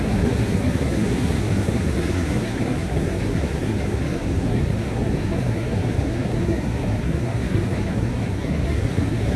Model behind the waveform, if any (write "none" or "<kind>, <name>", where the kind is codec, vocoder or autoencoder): codec, SNAC